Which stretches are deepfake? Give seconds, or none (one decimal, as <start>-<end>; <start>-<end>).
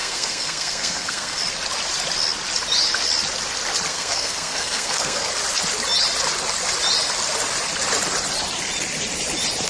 0.0-1.4; 3.9-5.3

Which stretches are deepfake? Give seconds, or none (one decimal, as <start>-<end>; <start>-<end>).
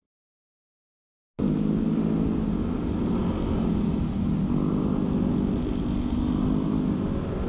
none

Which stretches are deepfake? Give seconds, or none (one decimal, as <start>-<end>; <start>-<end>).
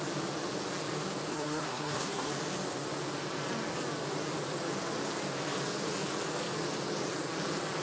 1.3-2.3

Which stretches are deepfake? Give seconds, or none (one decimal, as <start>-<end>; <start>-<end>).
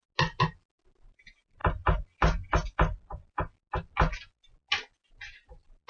none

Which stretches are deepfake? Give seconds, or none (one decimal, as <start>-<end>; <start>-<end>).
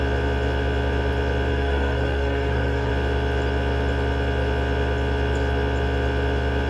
1.5-2.9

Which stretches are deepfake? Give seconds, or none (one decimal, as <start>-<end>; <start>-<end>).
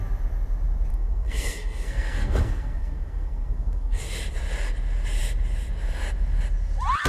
0.9-4.0